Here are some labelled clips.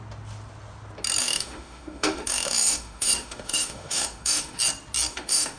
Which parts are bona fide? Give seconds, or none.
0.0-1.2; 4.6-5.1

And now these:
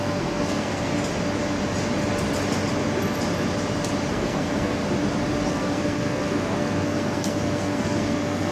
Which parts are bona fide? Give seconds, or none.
0.9-4.1; 4.8-5.5